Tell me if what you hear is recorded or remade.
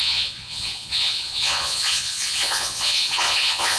remade